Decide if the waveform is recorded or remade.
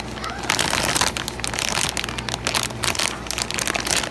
recorded